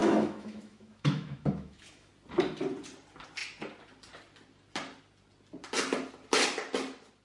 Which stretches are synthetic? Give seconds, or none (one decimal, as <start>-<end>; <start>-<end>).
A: 0.0-2.1